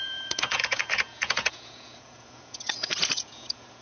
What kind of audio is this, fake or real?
fake